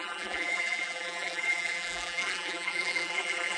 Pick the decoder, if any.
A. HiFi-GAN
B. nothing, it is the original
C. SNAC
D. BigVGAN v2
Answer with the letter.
D